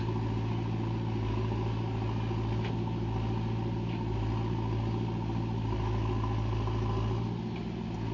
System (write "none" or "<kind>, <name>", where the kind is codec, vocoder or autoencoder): none